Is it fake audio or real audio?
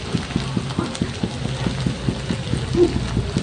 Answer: real